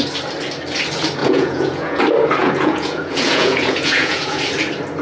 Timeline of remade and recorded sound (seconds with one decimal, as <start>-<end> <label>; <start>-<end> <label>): 0.0-1.2 recorded; 1.2-2.0 remade; 2.0-2.4 recorded; 2.4-4.4 remade; 4.4-5.0 recorded